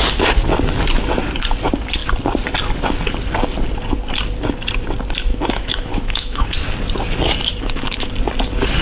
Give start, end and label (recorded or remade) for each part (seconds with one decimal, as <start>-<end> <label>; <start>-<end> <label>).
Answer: 0.0-5.3 recorded; 5.3-6.5 remade; 6.5-7.5 recorded; 7.5-8.1 remade; 8.1-8.8 recorded